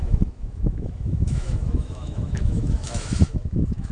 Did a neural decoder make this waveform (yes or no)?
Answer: yes